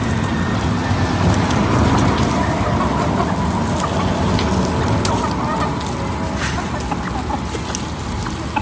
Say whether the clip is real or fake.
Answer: real